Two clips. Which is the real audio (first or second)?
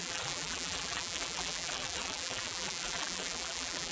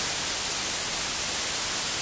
second